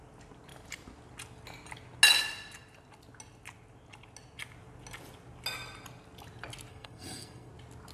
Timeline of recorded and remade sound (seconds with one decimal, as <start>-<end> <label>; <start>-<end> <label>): 0.0-6.7 recorded; 6.7-7.5 remade; 7.5-7.9 recorded